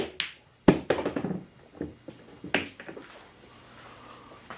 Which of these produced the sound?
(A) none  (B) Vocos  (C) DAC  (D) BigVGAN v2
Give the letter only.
A